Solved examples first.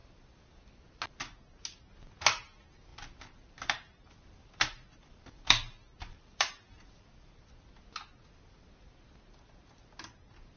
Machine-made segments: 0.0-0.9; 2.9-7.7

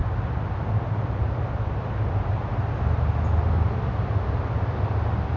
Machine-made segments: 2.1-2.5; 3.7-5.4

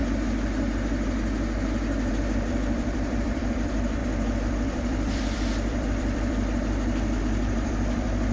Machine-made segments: 2.1-8.3

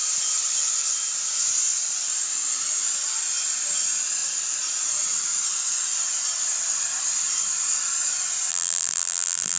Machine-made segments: 8.5-9.6

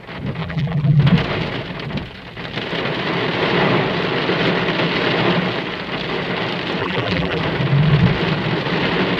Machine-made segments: 0.4-1.0; 6.8-7.4

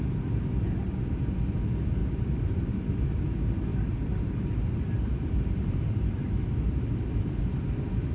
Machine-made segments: 2.0-3.0; 3.7-7.4

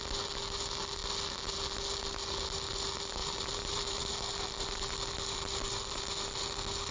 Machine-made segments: 3.2-4.1